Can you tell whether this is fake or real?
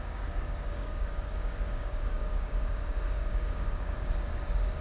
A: fake